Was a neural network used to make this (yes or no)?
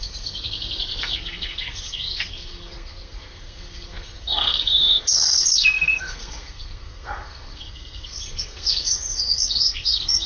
yes